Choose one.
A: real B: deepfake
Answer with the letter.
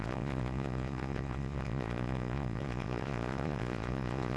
B